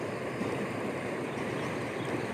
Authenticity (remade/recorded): remade